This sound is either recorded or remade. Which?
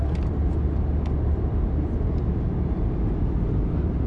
recorded